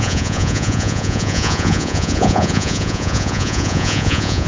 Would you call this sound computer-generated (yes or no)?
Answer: yes